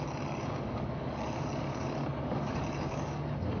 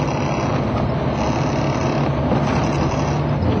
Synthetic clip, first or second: first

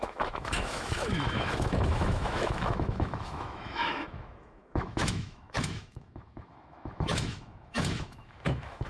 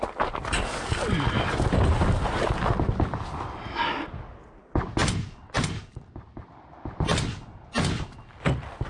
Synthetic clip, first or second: first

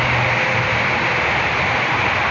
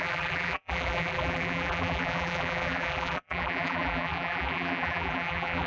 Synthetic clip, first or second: second